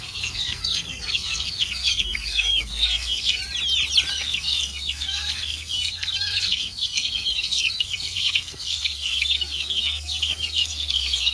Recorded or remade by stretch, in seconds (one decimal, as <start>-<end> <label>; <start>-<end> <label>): 0.0-3.4 remade; 3.4-4.1 recorded; 4.1-11.3 remade